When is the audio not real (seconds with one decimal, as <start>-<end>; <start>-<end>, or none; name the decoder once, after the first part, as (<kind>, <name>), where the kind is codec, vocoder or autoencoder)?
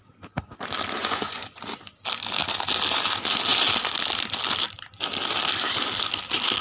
1.0-1.6 (vocoder, Vocos)